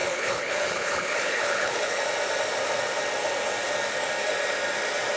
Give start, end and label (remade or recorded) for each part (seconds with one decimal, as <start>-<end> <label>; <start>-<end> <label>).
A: 0.0-2.0 remade; 2.0-5.2 recorded